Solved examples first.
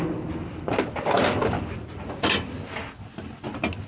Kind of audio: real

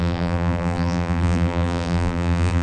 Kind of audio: fake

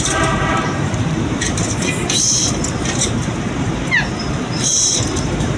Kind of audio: fake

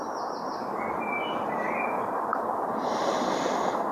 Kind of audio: real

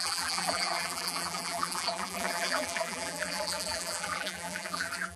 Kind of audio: fake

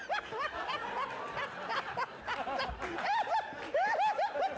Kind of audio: real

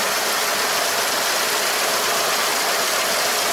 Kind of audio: real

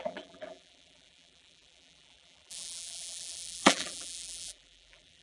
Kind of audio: fake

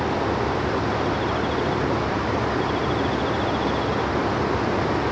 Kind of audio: real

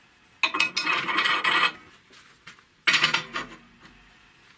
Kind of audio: real